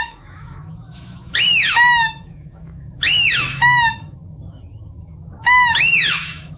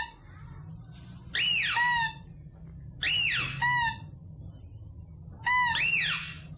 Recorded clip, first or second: second